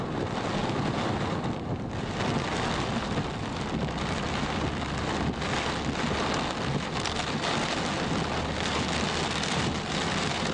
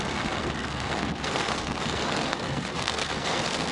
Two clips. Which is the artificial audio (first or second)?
second